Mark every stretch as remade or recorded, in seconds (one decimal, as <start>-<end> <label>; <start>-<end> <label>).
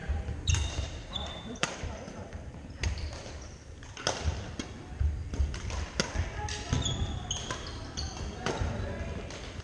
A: 0.0-1.8 remade; 1.8-9.6 recorded